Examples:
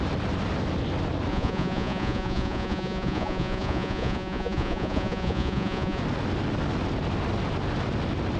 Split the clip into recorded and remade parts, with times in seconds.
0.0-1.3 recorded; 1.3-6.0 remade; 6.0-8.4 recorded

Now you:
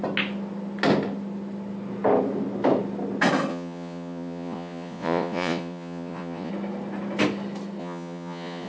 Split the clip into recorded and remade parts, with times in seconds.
0.0-3.5 recorded; 3.5-6.5 remade; 6.5-7.8 recorded; 7.8-8.7 remade

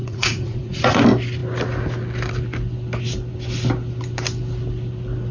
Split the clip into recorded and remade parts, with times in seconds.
0.0-1.0 remade; 1.0-5.3 recorded

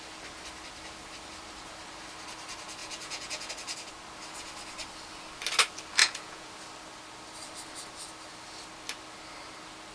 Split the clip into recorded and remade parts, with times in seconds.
0.0-2.8 recorded; 2.8-3.5 remade; 3.5-6.0 recorded; 6.0-6.5 remade; 6.5-9.9 recorded

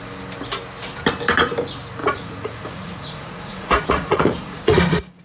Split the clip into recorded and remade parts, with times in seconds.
0.0-2.0 recorded; 2.0-5.2 remade

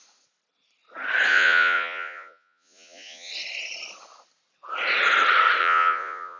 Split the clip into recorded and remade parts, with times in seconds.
0.0-1.3 recorded; 1.3-3.3 remade; 3.3-5.6 recorded; 5.6-6.4 remade

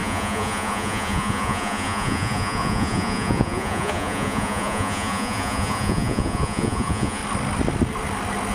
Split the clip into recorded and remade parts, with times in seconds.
0.0-7.2 remade; 7.2-8.5 recorded

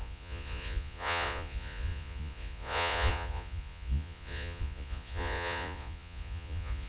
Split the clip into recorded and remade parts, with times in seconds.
0.0-6.9 remade